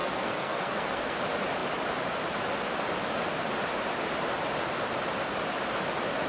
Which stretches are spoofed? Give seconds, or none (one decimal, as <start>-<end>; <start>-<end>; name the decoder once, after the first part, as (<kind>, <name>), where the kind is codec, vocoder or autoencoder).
0.0-1.2 (codec, SNAC)